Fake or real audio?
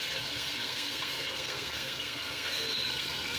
fake